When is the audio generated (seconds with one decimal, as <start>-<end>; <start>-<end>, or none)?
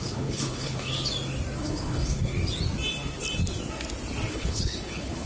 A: 0.0-0.9; 1.6-2.3; 4.3-5.3